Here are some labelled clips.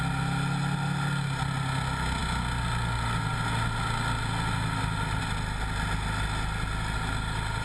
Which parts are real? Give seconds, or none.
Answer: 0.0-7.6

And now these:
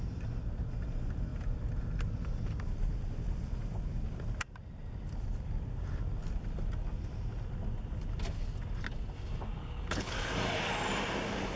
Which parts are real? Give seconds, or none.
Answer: 0.0-9.6; 10.1-11.6

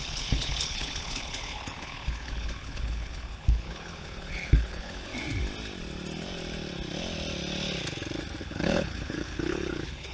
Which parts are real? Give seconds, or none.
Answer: 5.1-8.4

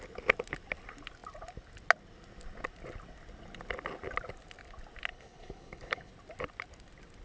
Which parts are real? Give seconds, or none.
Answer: 0.0-5.1; 6.1-7.2

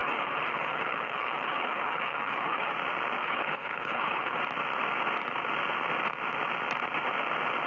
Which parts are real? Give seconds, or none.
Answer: 2.7-3.2; 4.4-7.7

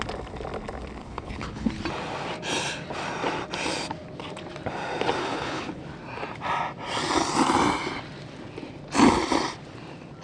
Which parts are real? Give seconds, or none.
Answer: 0.0-1.0; 1.7-5.2; 5.8-10.2

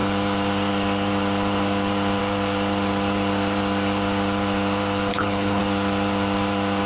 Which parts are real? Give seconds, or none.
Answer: 0.0-5.1; 5.6-6.9